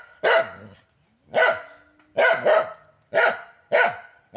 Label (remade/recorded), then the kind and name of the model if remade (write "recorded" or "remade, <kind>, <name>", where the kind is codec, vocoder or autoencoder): recorded